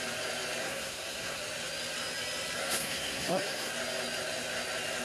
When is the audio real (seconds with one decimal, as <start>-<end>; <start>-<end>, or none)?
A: 0.0-0.6; 1.4-2.6; 3.7-5.0